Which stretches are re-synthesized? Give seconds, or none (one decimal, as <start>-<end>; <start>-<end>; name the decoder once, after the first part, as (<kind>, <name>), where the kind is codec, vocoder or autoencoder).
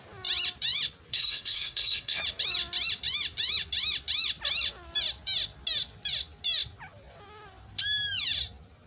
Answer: 1.1-2.2 (codec, SNAC)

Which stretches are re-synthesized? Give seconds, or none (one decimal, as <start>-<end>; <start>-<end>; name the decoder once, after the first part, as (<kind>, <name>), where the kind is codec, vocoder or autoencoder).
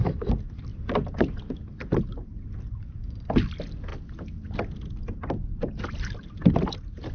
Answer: none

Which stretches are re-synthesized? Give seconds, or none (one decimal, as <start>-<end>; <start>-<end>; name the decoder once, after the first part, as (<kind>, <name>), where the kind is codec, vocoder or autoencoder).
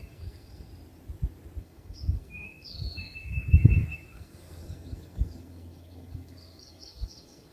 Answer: 0.0-0.7 (codec, SNAC); 1.6-7.5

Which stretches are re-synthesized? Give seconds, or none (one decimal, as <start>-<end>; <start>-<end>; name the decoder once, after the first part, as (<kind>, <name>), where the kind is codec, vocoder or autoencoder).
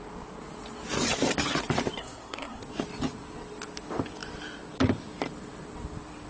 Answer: 2.0-2.6 (codec, SNAC)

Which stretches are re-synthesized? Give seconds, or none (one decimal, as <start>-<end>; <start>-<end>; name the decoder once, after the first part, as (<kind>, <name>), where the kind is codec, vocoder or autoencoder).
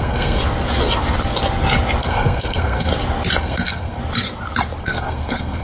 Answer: 0.0-0.4 (codec, SNAC); 2.0-2.9; 3.4-4.0; 4.8-5.6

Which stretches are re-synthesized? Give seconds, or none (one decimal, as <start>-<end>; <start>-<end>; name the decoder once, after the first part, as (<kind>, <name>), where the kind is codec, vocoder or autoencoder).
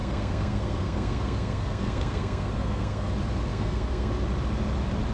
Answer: 0.0-3.1 (codec, SNAC); 3.5-4.1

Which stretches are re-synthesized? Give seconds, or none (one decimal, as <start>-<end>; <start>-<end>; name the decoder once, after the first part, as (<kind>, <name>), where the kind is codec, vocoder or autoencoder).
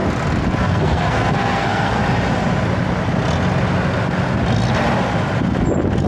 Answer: 0.6-2.0 (codec, SNAC)